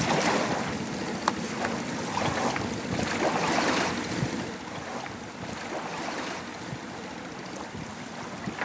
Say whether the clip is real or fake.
real